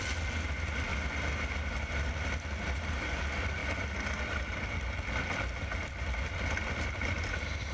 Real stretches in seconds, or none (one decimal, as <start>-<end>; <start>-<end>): 0.9-1.9; 3.6-4.2